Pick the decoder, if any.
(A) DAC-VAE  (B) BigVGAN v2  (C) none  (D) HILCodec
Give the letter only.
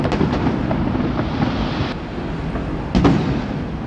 C